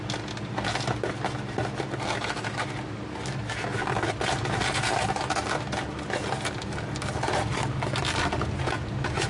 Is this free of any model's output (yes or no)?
yes